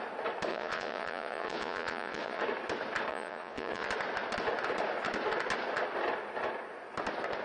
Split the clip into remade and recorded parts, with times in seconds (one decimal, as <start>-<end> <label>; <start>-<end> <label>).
0.0-0.5 recorded; 0.5-2.4 remade; 2.4-3.1 recorded; 3.1-3.9 remade; 3.9-7.4 recorded